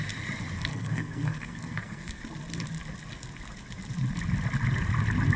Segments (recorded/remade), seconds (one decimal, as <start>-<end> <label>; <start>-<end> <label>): 0.0-0.7 recorded; 0.7-2.2 remade; 2.2-5.4 recorded